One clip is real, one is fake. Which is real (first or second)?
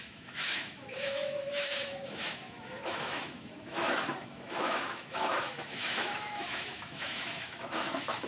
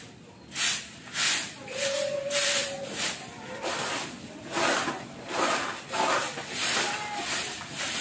second